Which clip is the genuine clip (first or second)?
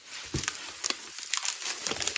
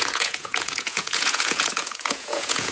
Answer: first